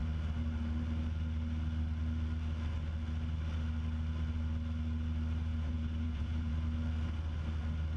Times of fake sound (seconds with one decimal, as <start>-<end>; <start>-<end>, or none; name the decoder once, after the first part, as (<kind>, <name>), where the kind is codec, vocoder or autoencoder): 5.5-6.5 (vocoder, Vocos)